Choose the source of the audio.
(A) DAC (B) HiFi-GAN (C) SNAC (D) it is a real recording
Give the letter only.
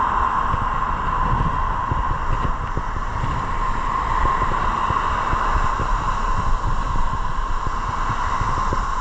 D